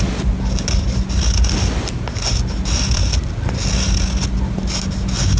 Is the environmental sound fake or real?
real